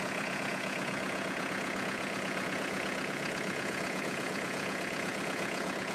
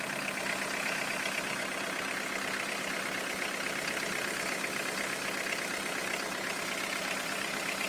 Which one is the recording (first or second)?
second